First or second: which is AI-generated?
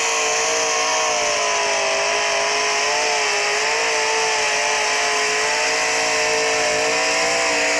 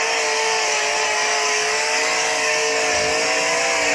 second